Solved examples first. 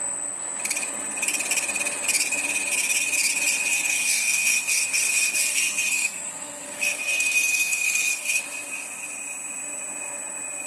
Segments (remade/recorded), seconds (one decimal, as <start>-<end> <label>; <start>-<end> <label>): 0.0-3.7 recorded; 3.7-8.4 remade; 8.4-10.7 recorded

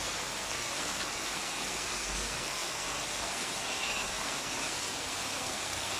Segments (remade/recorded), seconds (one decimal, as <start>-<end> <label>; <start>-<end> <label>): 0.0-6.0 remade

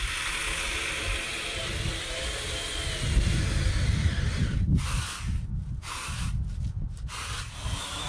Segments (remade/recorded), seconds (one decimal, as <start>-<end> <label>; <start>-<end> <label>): 0.0-8.1 recorded